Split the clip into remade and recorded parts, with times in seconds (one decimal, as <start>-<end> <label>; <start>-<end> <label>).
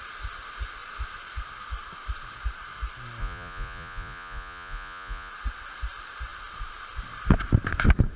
0.0-3.2 recorded; 3.2-5.3 remade; 5.3-8.2 recorded